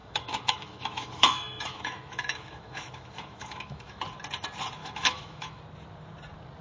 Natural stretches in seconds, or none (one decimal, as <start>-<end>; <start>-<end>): 4.0-4.8; 5.6-6.6